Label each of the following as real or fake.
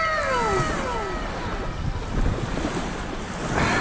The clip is real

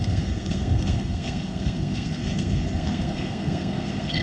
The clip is fake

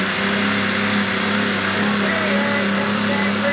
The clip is real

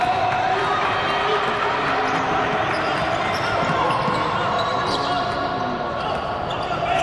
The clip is real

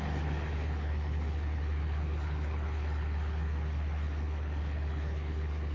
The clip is fake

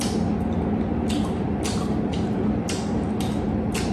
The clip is real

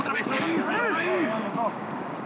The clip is fake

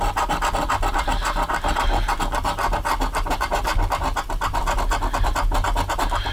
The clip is real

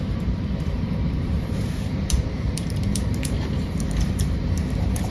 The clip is fake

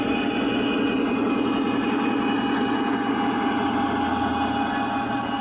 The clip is real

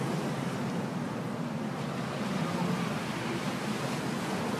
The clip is fake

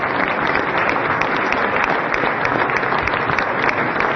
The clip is real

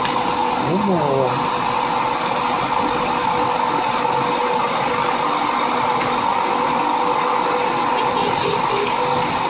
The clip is real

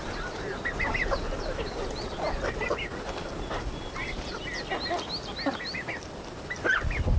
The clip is real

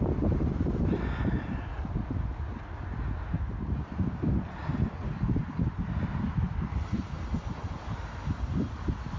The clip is real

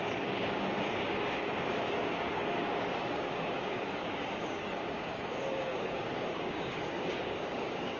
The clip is fake